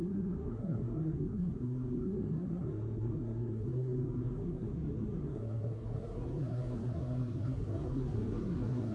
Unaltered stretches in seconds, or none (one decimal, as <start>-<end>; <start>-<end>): none